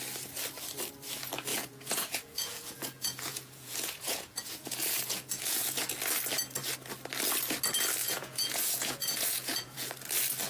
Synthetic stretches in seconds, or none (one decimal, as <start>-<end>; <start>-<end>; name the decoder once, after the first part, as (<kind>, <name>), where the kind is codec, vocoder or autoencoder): 1.5-5.9 (vocoder, Vocos); 8.0-9.9

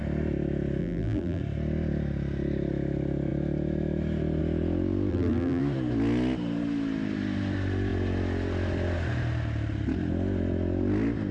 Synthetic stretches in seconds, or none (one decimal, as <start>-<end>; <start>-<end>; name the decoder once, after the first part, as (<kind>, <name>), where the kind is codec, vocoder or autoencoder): 0.8-1.4 (vocoder, BigVGAN v2); 5.1-5.6

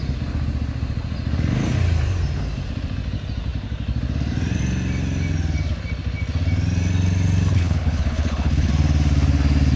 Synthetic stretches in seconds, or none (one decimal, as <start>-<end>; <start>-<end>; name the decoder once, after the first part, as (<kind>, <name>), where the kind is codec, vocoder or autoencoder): 7.5-8.7 (codec, HILCodec)

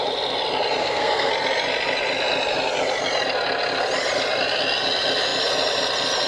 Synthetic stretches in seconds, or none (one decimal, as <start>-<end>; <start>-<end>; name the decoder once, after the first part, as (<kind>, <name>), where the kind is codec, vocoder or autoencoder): 0.8-1.3 (codec, SNAC)

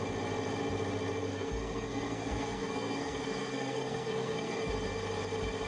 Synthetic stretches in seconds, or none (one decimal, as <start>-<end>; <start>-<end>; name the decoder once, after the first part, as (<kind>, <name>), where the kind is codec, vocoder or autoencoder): 1.3-4.7 (codec, SNAC)

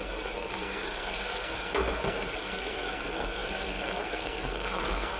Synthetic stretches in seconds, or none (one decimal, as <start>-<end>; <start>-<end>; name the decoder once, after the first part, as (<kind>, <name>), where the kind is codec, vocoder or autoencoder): 0.0-5.2 (codec, SNAC)

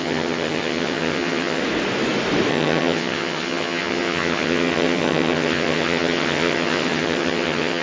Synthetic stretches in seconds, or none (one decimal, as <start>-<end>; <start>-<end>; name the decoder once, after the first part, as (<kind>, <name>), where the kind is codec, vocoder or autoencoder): 0.0-1.6 (vocoder, HiFi-GAN); 2.5-7.8

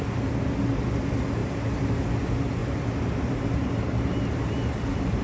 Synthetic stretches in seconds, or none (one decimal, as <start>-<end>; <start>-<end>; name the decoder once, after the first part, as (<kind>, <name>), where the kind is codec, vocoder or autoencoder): 1.4-2.0 (vocoder, BigVGAN v2); 2.6-4.2